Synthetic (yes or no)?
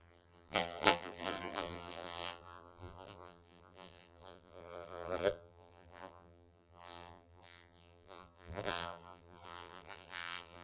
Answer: yes